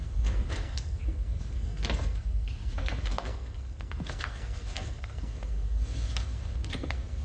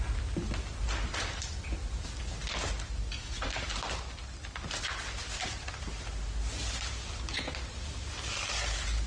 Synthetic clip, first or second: first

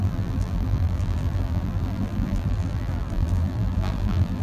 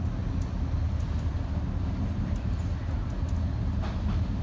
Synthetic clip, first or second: first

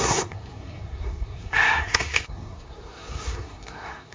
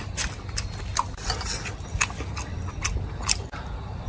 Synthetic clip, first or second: first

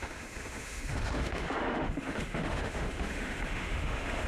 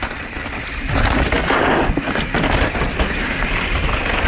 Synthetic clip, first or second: first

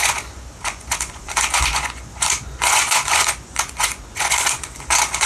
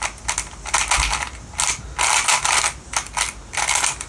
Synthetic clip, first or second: first